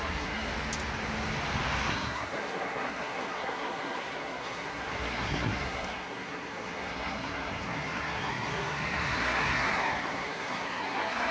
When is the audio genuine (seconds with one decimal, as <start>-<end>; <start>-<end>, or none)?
0.5-1.9